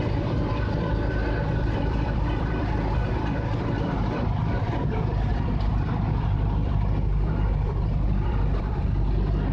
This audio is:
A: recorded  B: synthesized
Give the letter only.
B